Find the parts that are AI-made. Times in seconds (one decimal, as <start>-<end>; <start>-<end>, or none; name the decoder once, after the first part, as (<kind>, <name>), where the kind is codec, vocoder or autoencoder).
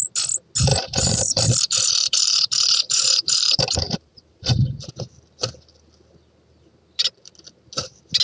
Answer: 0.7-4.9 (vocoder, BigVGAN v2)